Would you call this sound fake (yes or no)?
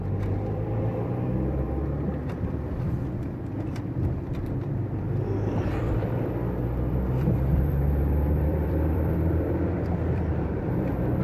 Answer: yes